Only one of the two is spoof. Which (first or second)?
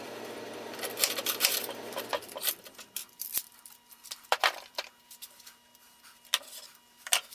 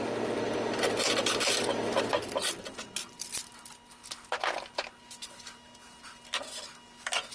first